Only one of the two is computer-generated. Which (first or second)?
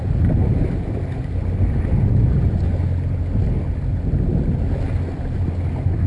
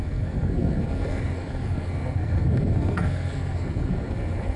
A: second